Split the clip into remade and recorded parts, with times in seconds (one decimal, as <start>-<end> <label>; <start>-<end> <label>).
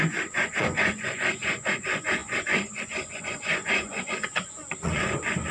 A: 0.0-5.5 remade